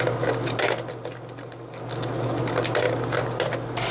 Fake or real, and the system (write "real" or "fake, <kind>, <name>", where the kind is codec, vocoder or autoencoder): real